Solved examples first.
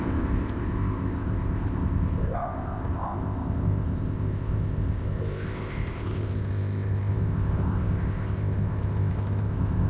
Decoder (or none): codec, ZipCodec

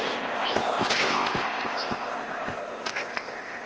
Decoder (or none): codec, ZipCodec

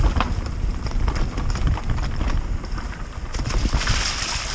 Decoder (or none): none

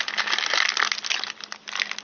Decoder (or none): none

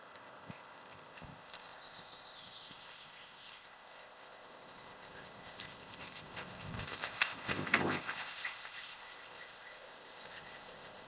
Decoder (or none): codec, ZipCodec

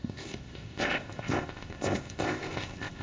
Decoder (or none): codec, ZipCodec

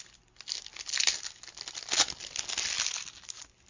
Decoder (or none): none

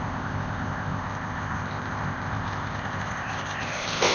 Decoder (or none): codec, ZipCodec